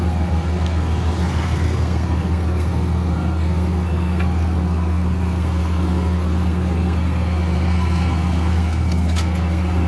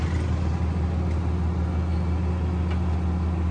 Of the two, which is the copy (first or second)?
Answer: first